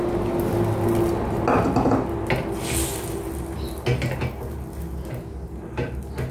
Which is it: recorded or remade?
recorded